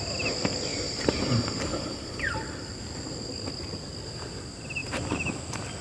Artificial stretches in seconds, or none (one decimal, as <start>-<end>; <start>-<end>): 0.7-2.4